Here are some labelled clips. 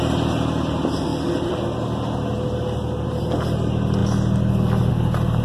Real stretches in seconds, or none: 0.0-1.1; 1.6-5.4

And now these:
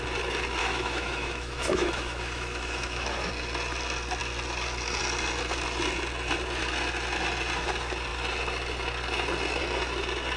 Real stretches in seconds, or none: 0.0-0.6; 3.3-10.4

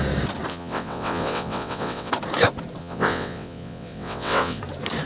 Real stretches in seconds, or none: 0.0-0.5; 2.1-2.8; 4.6-5.1

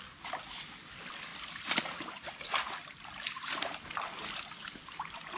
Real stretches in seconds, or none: 0.0-5.4

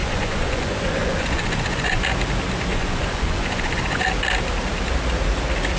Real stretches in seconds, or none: 2.0-2.7; 4.0-5.8

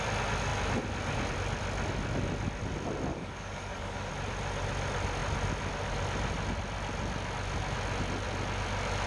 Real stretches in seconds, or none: 0.0-3.1; 4.1-9.1

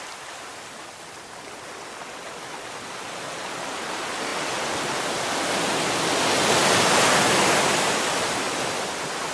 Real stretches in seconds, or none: 0.0-9.3

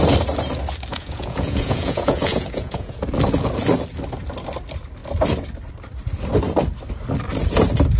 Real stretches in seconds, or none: 0.0-0.9; 3.0-8.0